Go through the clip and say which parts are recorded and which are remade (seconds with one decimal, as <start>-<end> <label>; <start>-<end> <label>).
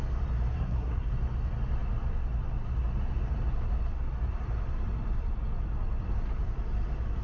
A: 0.0-0.5 recorded; 0.5-1.1 remade; 1.1-7.2 recorded